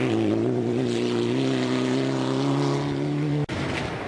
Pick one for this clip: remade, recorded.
recorded